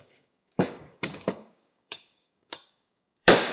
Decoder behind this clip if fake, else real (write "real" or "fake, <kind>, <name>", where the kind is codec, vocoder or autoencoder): fake, codec, DAC